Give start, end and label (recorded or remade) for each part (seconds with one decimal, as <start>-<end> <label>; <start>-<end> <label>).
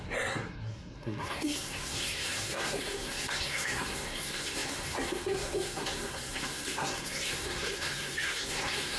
0.0-9.0 remade